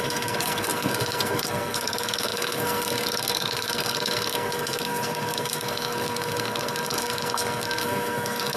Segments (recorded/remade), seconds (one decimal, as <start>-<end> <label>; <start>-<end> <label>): 0.0-8.6 remade